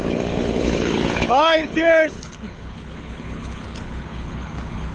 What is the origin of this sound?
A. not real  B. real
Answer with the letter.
A